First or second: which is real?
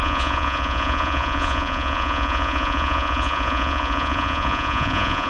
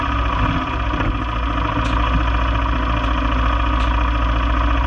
second